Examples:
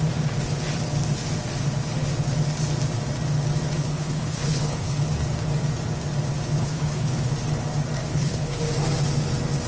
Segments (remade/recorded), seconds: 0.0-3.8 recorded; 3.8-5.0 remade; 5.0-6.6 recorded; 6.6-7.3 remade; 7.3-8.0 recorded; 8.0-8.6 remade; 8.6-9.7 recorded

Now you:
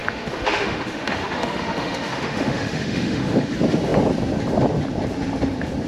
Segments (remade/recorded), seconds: 0.0-3.5 remade; 3.5-5.9 recorded

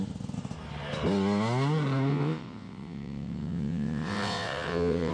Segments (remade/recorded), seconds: 0.0-2.1 recorded; 2.1-5.1 remade